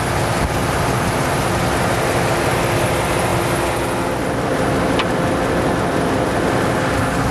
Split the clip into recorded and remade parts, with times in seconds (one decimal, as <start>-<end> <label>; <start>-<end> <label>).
0.0-7.3 recorded